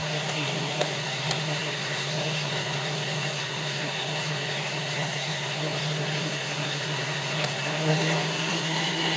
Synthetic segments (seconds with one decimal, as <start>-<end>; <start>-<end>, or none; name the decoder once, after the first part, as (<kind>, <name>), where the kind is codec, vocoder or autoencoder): 0.0-9.2 (codec, SNAC)